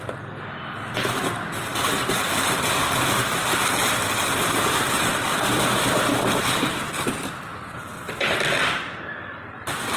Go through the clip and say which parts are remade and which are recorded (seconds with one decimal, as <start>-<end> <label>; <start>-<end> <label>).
0.0-10.0 recorded